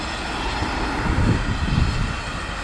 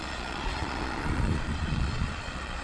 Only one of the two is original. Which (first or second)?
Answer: first